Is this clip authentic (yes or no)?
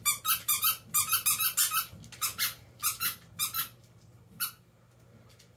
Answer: yes